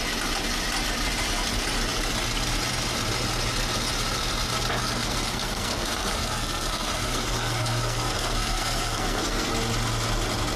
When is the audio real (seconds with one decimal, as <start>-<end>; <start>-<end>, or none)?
0.0-4.8; 9.5-10.6